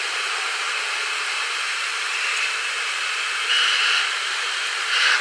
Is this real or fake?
fake